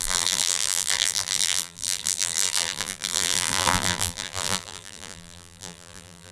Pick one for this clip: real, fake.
fake